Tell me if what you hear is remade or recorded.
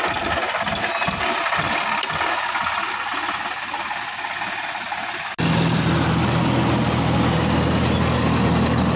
recorded